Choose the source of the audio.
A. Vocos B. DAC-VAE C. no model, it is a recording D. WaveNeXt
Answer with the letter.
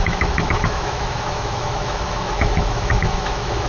B